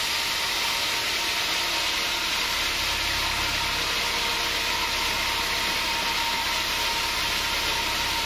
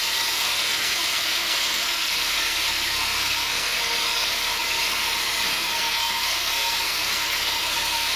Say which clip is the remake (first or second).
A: second